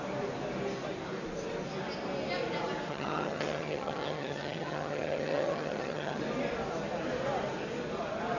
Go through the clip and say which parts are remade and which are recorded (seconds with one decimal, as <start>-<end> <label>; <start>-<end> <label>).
0.0-2.9 recorded; 2.9-6.2 remade; 6.2-8.4 recorded